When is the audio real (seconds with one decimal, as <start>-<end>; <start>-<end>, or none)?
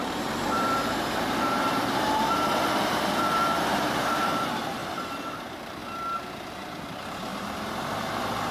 4.8-5.3; 5.8-6.5